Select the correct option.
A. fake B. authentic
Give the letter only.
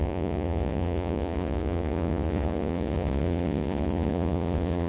A